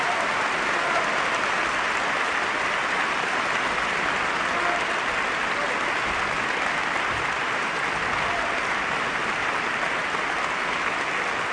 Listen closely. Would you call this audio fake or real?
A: real